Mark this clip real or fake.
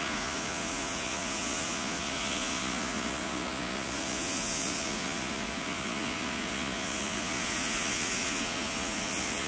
fake